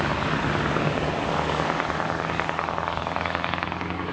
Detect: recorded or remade remade